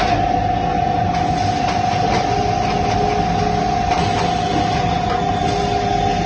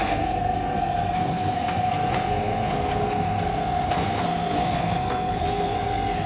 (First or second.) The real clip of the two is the first